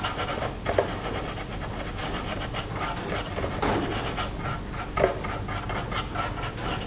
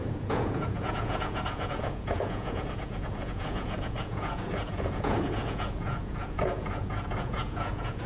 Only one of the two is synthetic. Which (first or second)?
second